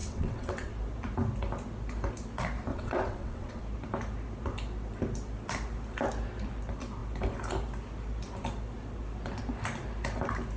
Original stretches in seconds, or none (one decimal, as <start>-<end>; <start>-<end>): 0.7-2.7; 3.6-10.6